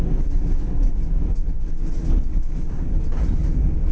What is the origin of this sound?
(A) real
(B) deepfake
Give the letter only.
A